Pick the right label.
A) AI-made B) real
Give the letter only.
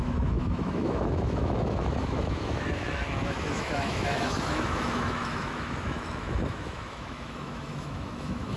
A